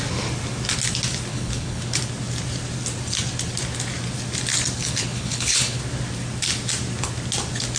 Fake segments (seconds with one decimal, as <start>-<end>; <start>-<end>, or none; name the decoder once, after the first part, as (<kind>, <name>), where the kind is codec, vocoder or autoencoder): 1.3-2.0 (codec, HILCodec); 5.0-5.8